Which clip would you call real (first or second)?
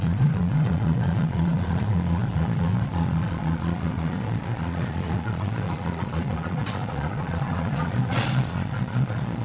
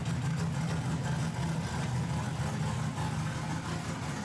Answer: second